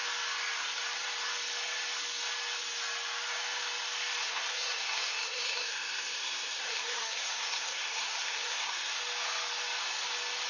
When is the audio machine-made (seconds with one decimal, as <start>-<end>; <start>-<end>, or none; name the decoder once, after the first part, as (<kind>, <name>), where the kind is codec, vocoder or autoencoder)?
4.2-9.0 (codec, SNAC)